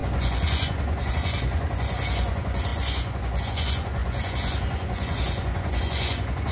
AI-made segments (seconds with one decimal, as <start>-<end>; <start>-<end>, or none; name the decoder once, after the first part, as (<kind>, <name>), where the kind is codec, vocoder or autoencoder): 0.0-6.5 (vocoder, Vocos)